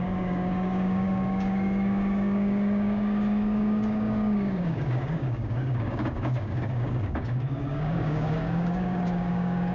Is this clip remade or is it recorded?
remade